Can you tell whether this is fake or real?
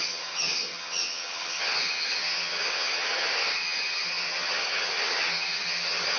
fake